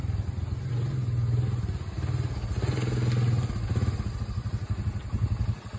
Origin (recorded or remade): recorded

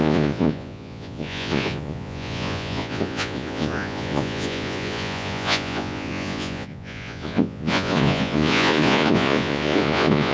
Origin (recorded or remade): remade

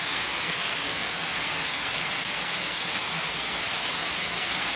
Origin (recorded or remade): remade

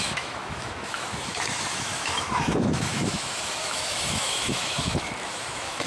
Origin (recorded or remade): remade